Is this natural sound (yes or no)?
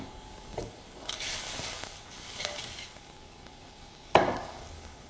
no